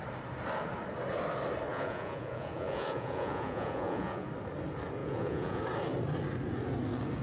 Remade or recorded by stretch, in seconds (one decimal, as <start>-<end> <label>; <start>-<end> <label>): 0.0-1.7 recorded; 1.7-4.3 remade; 4.3-5.0 recorded; 5.0-5.6 remade; 5.6-7.2 recorded